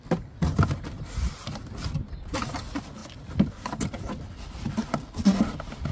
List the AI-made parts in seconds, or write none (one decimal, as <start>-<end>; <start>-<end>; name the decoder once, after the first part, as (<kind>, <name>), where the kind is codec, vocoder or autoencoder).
none